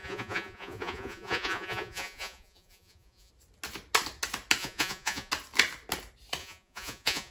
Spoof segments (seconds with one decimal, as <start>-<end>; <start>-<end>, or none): 0.0-3.3; 4.6-5.3; 6.4-7.3